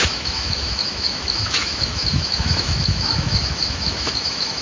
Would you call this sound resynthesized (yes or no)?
yes